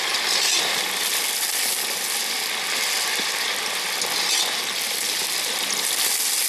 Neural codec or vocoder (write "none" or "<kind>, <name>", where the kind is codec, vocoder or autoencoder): none